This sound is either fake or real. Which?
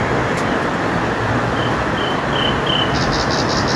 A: real